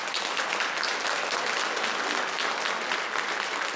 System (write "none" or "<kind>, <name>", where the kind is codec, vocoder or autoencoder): none